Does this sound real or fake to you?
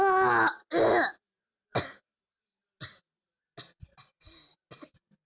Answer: real